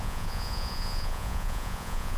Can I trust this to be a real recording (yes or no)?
no